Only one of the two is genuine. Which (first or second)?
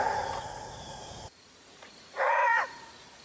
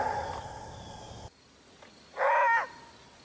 second